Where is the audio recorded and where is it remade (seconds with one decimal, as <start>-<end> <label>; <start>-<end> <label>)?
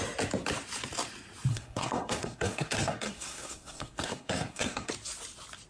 0.0-1.5 recorded; 1.5-4.9 remade; 4.9-5.7 recorded